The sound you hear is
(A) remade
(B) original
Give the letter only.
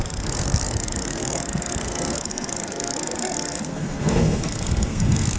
A